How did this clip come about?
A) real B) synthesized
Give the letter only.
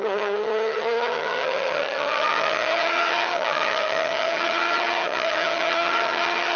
B